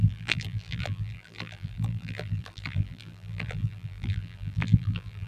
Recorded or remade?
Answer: remade